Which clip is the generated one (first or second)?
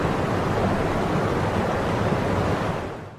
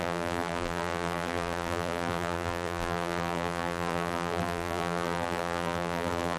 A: second